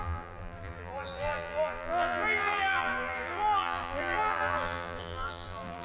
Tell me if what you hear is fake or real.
fake